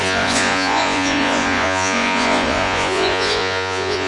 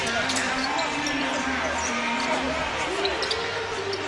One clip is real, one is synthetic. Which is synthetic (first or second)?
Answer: first